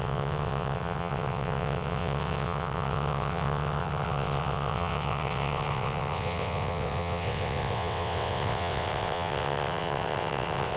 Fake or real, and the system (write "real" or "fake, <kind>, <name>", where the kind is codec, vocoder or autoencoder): fake, vocoder, WaveNeXt